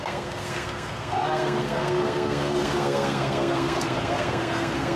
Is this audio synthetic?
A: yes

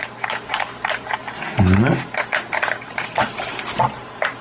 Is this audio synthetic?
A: no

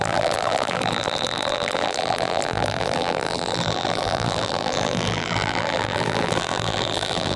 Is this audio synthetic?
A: yes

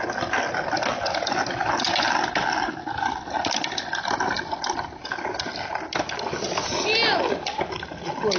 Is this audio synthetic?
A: no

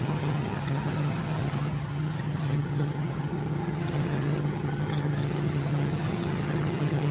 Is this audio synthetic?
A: yes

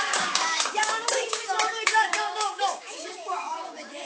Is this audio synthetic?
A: yes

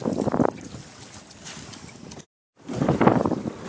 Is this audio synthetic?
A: no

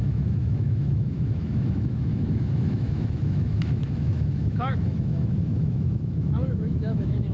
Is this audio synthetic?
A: yes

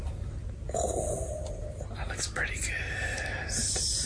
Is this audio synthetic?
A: no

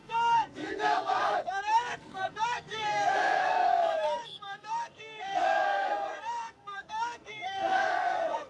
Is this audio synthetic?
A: yes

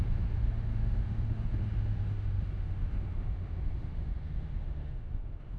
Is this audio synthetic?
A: yes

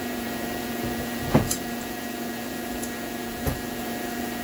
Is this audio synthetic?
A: yes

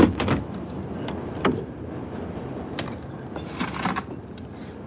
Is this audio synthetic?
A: no